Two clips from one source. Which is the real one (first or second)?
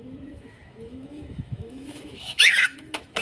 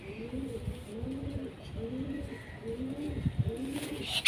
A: second